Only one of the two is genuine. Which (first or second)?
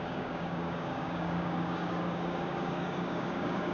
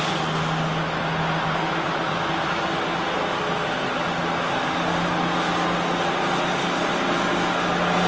second